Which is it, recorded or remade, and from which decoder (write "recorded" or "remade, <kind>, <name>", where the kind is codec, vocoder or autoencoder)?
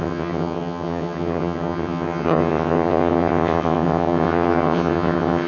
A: remade, vocoder, HiFi-GAN